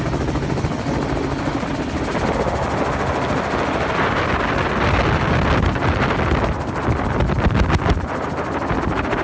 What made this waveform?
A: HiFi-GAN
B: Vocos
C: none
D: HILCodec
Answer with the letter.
C